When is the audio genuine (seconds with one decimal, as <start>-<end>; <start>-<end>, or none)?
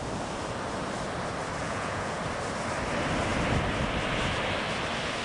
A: 0.0-1.6; 2.2-5.2